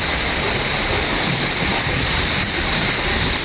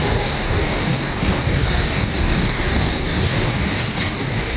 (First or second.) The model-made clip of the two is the second